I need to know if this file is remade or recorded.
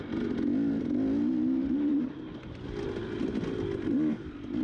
recorded